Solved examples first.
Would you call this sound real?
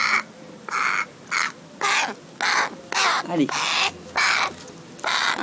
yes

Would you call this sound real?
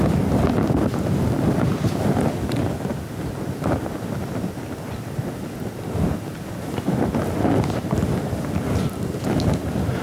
yes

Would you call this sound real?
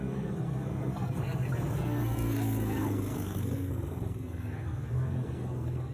no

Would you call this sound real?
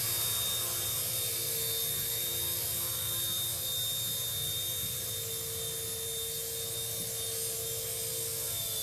yes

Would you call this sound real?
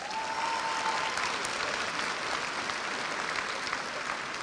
yes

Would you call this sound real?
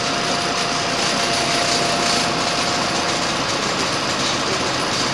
yes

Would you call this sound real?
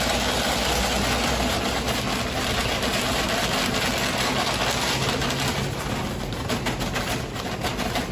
yes